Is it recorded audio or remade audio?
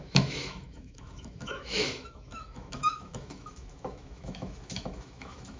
remade